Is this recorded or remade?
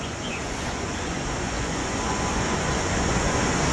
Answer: remade